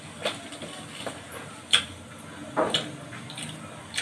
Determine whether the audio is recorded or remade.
recorded